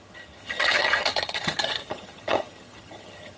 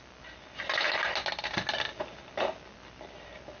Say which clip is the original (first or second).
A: second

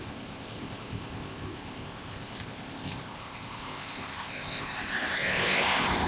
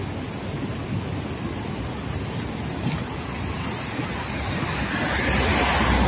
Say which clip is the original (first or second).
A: second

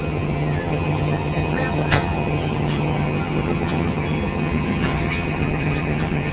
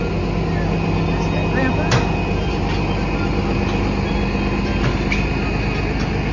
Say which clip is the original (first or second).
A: second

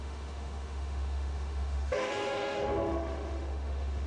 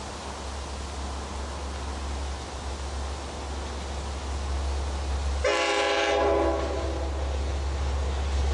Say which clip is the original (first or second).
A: second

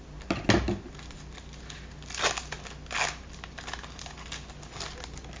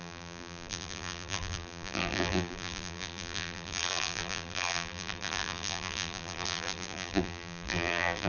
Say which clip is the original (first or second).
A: first